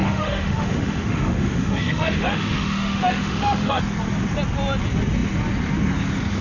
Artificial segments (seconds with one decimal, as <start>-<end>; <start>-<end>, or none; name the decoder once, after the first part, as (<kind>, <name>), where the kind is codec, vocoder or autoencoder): 0.0-3.8 (autoencoder, DAC-VAE)